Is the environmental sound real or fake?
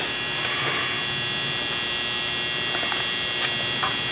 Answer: real